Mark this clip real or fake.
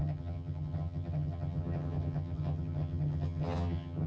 fake